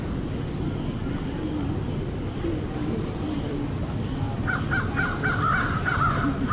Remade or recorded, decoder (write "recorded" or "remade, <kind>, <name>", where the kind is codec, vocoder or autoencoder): recorded